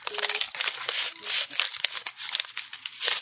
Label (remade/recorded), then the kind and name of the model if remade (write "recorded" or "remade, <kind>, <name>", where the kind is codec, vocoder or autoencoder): recorded